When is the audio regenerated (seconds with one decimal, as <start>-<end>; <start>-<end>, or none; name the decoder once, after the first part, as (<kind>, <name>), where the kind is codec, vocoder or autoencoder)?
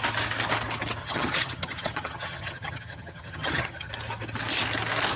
1.0-3.9 (vocoder, HiFi-GAN)